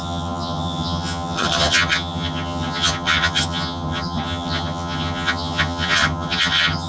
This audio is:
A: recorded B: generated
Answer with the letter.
B